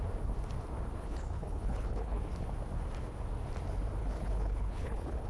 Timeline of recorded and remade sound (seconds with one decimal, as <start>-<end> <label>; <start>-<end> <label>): 0.0-1.0 recorded; 1.0-2.2 remade; 2.2-4.0 recorded; 4.0-5.3 remade